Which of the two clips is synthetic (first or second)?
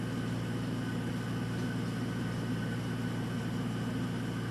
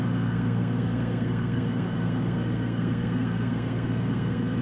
second